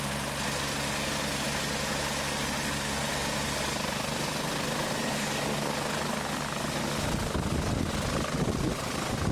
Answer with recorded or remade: recorded